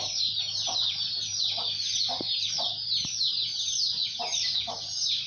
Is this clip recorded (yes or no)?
yes